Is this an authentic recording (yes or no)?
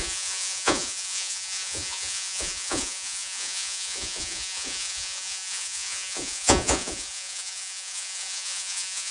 no